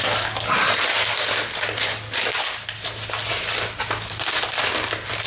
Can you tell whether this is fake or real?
real